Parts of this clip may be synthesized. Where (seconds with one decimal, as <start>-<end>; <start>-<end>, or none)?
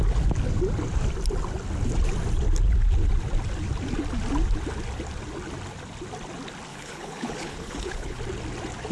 6.7-8.2